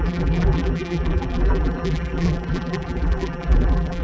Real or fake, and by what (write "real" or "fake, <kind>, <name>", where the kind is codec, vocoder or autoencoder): fake, vocoder, BigVGAN v2